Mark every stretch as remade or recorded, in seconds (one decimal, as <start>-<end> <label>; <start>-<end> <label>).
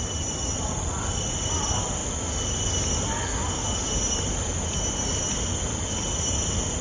0.0-6.8 recorded